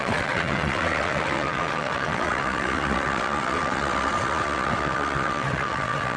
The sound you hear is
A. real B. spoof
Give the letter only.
B